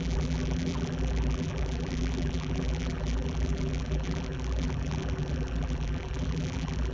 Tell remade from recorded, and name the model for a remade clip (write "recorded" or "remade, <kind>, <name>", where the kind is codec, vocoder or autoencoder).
remade, vocoder, BigVGAN v2